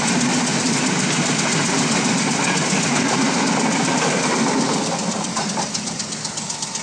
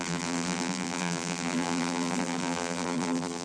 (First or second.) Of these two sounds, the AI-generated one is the second